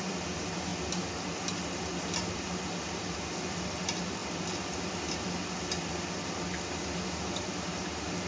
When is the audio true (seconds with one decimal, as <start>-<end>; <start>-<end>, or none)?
0.7-1.4; 4.2-5.1